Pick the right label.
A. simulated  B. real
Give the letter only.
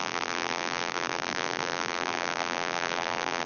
A